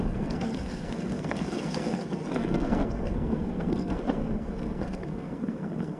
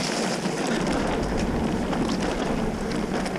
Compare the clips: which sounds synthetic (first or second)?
first